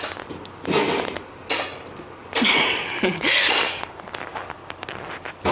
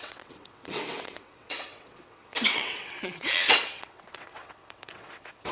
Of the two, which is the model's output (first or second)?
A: second